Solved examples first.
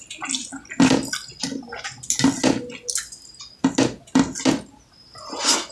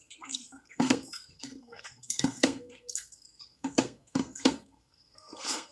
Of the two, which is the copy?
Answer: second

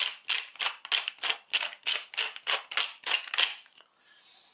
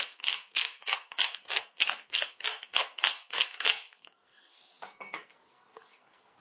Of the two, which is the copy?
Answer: second